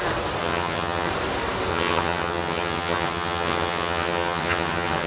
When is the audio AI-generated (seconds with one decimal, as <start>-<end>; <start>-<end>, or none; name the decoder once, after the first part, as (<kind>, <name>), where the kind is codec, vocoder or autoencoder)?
0.4-1.1 (vocoder, HiFi-GAN); 1.7-5.1